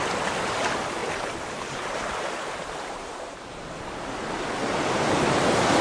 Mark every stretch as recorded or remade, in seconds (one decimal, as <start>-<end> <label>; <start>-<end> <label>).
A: 0.0-1.0 recorded; 1.0-4.0 remade; 4.0-5.8 recorded